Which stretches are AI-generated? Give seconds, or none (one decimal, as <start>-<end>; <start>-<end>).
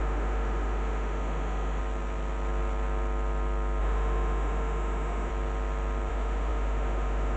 0.0-1.8; 3.8-5.3; 6.1-7.4